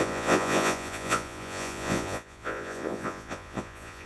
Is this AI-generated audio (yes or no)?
yes